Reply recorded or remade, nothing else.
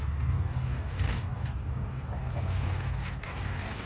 remade